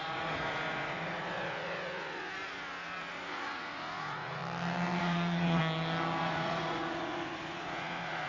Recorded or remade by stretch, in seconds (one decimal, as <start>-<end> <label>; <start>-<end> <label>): 0.0-4.4 remade; 4.4-5.0 recorded; 5.0-5.6 remade; 5.6-6.2 recorded; 6.2-8.3 remade